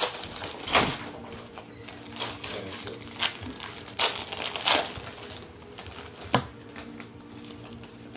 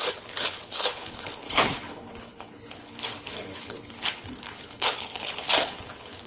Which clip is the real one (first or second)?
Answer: first